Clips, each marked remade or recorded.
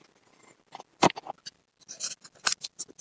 recorded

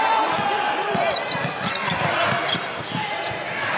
recorded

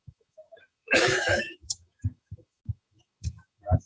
remade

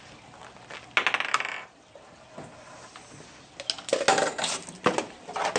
recorded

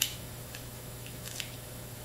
remade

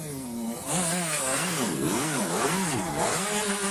remade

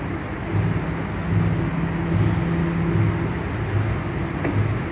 recorded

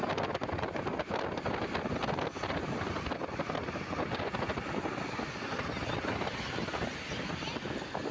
recorded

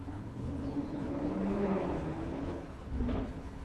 remade